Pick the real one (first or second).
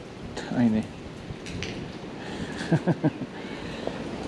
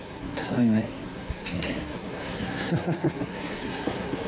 first